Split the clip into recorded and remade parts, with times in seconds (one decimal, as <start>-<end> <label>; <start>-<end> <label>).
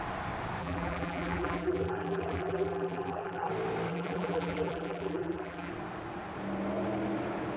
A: 0.0-0.6 recorded; 0.6-3.5 remade; 3.5-3.9 recorded; 3.9-5.7 remade; 5.7-7.6 recorded